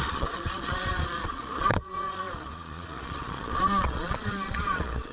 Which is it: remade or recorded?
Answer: remade